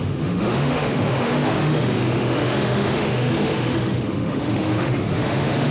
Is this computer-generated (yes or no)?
yes